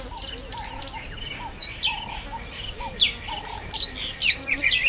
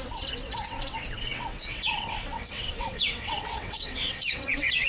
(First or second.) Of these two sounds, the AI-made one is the second